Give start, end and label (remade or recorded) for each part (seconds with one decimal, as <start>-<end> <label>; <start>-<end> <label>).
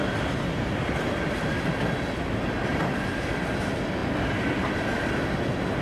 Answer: 0.0-5.8 recorded